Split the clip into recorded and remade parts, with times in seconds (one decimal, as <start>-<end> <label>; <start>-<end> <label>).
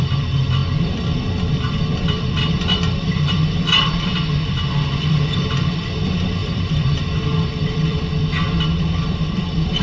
0.0-4.1 remade; 4.1-5.0 recorded; 5.0-9.8 remade